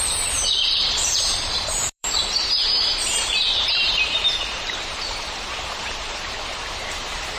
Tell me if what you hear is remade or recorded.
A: remade